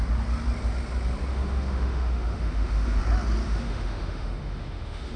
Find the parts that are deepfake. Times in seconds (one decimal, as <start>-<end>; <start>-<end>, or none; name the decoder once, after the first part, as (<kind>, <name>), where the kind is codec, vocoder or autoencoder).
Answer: 1.3-3.0 (autoencoder, DAC-VAE); 3.4-5.2